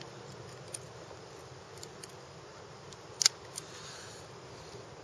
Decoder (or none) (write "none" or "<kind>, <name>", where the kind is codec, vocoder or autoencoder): none